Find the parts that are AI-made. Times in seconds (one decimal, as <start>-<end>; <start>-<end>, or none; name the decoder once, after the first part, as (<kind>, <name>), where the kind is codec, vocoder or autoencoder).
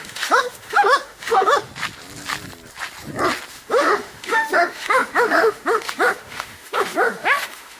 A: 0.0-1.7 (autoencoder, DAC-VAE); 3.5-7.8